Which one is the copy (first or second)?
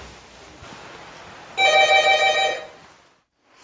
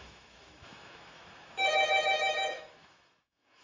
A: second